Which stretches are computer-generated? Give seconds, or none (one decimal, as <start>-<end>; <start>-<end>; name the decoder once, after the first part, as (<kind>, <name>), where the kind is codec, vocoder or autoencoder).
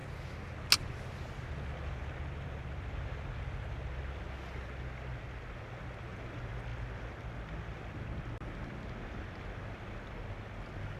none